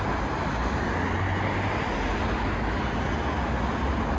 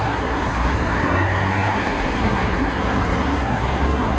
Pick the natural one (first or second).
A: first